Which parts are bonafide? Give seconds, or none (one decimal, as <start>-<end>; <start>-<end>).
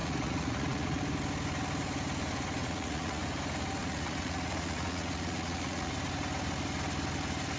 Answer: 1.0-2.6; 3.2-3.8; 5.9-7.6